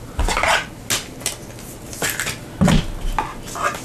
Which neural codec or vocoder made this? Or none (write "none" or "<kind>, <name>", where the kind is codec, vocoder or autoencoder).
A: none